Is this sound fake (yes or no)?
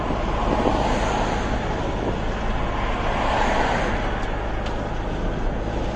no